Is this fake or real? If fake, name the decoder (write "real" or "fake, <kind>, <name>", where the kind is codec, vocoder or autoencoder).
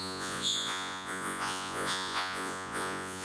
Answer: fake, vocoder, Vocos